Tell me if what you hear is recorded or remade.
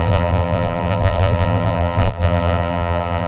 remade